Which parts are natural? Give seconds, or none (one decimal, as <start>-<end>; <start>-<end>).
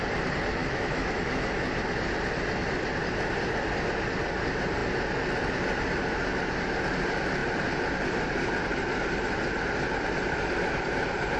0.0-0.6; 1.5-11.4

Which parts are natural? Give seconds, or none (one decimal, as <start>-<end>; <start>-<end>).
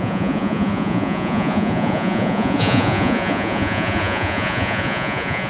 none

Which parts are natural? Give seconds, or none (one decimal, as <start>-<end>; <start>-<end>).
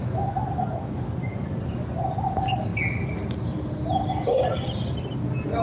0.0-5.6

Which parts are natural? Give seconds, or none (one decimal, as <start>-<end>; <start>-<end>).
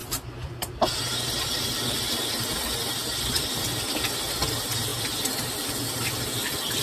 4.1-4.9; 6.2-6.8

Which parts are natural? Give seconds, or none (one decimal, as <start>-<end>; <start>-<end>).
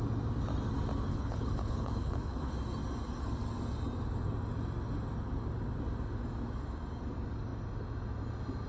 0.0-1.1; 2.5-8.7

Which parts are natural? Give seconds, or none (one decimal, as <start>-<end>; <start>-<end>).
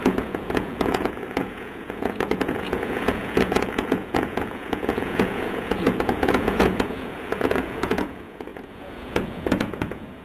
none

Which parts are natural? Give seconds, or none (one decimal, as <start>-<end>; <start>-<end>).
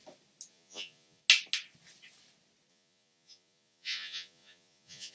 0.0-0.5; 1.2-2.7